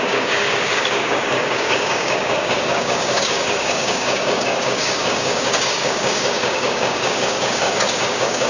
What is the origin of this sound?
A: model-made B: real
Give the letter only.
A